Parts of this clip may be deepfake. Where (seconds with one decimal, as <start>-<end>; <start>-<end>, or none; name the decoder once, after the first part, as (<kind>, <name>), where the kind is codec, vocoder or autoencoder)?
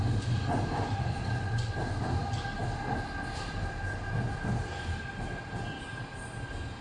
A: none